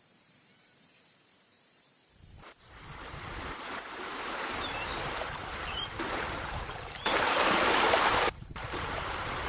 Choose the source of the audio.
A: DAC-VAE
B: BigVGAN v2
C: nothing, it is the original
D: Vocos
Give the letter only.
B